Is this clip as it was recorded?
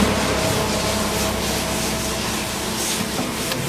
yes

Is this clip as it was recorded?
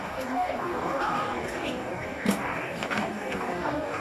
no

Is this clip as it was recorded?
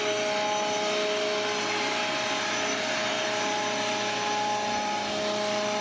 yes